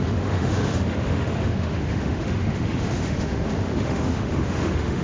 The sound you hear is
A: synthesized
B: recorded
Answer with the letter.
A